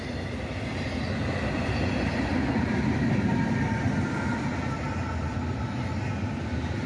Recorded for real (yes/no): yes